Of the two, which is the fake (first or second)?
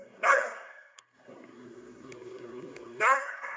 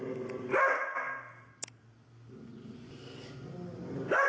first